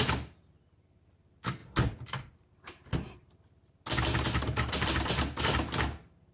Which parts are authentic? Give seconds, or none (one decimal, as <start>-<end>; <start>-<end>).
0.0-6.3